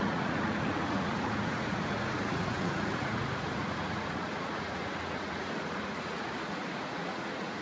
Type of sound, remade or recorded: remade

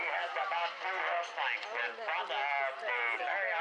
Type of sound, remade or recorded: recorded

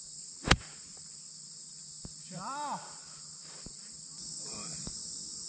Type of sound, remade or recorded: remade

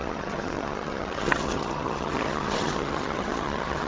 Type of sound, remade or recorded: remade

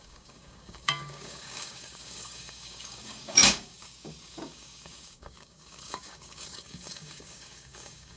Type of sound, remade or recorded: remade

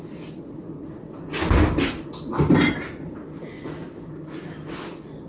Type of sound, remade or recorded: recorded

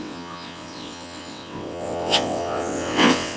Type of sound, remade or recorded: remade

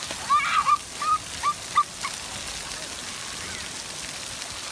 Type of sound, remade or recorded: recorded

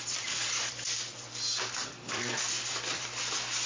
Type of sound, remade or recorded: remade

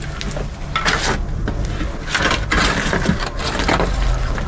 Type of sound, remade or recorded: recorded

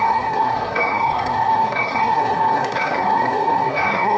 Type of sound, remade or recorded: remade